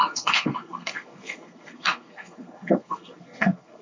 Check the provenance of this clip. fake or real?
fake